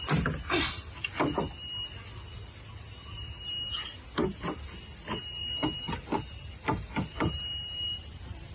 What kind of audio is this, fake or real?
real